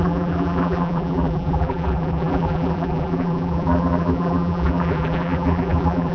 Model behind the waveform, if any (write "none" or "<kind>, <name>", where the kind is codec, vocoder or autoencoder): vocoder, BigVGAN v2